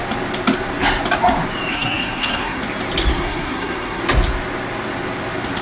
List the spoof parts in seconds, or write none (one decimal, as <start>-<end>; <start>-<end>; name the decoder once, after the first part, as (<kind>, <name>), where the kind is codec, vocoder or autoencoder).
1.7-2.6 (codec, SNAC); 3.1-4.0